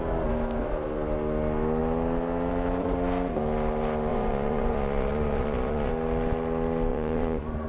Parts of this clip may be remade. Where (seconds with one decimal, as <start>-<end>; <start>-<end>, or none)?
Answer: 4.1-5.9; 6.9-7.7